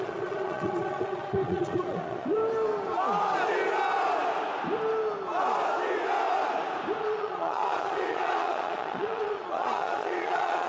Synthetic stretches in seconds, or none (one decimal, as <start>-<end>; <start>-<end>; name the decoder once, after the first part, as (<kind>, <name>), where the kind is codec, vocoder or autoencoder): 0.0-2.4 (vocoder, Vocos); 7.0-10.7